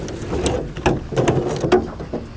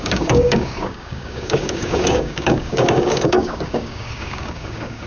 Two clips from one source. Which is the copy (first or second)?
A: second